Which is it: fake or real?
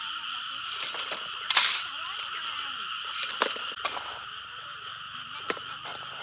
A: fake